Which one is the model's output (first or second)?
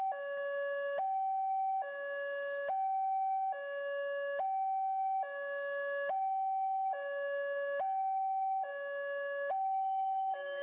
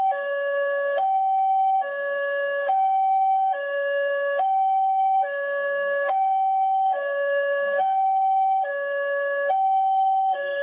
second